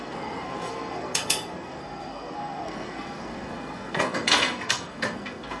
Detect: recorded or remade remade